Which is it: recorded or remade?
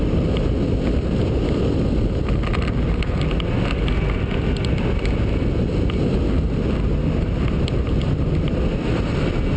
recorded